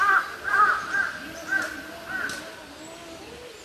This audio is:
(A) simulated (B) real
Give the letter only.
B